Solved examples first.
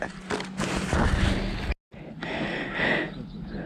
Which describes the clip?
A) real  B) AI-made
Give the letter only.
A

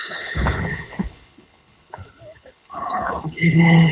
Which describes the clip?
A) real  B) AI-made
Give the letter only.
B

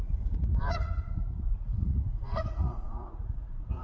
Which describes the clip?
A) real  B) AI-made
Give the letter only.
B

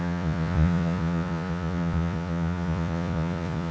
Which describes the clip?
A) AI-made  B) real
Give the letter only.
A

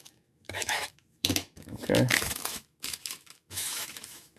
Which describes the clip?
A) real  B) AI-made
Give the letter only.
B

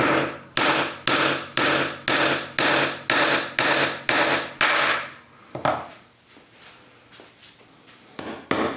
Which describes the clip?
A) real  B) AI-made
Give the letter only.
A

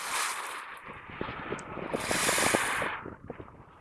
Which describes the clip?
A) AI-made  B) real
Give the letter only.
B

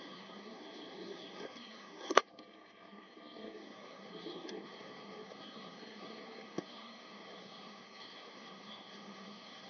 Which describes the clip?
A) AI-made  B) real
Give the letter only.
A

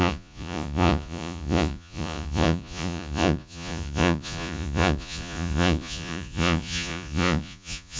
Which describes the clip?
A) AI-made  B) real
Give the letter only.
A